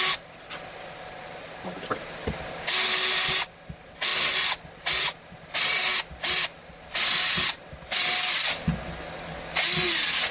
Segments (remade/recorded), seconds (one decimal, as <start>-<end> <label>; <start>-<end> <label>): 0.0-10.3 recorded